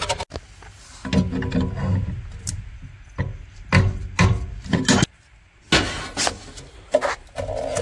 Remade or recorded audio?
recorded